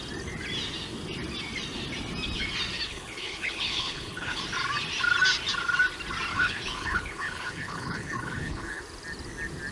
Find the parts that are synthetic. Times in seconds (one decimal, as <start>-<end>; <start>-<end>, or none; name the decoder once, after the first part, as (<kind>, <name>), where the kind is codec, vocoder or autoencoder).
2.9-4.4 (codec, HILCodec); 6.3-8.8